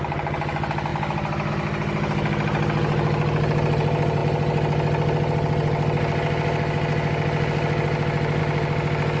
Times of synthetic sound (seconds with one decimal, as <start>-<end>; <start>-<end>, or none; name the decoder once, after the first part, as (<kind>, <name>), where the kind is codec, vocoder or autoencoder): none